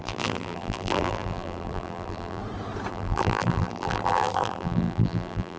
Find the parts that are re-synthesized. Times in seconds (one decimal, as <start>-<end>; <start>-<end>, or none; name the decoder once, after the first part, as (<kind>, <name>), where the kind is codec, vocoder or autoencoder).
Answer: 0.0-2.4 (vocoder, BigVGAN v2); 2.9-5.6